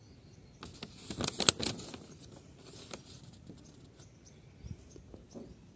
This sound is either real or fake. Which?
real